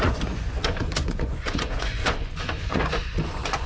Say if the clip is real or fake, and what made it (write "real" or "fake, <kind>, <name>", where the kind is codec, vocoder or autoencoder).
fake, vocoder, Vocos